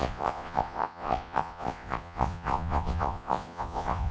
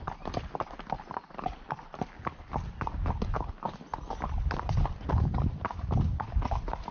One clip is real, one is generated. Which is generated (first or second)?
first